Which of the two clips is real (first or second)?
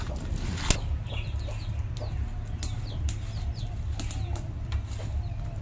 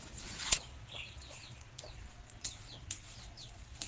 first